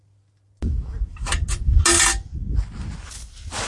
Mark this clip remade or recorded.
recorded